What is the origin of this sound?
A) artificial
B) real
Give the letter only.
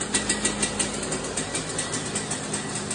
B